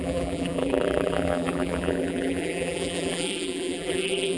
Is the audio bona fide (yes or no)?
no